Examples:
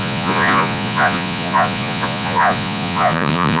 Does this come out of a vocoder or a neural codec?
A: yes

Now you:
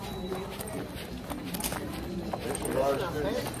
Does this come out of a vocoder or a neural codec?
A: no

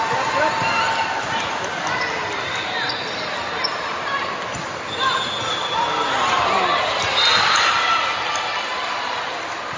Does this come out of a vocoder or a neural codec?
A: no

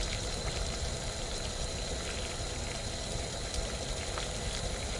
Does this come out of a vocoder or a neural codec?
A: no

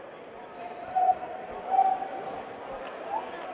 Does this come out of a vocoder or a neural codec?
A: no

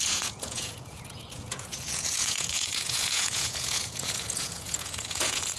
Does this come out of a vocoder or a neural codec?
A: yes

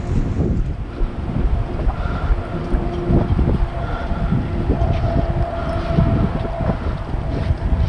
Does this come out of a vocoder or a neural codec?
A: no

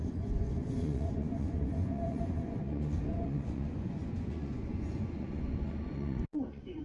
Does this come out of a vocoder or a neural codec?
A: yes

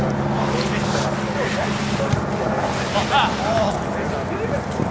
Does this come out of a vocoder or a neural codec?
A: no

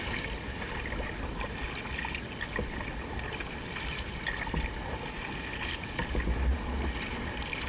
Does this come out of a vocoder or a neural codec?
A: no